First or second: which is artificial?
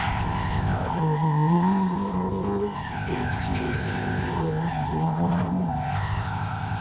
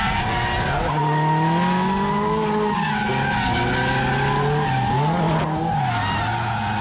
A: first